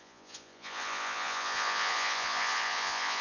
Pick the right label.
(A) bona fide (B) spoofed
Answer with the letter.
B